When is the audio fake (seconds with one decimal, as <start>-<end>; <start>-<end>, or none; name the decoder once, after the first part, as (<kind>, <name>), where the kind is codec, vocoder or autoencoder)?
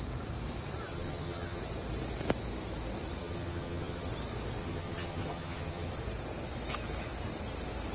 0.9-1.6 (vocoder, HiFi-GAN); 3.2-4.1; 4.6-5.9